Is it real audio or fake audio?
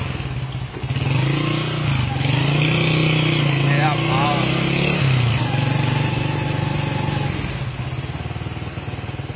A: real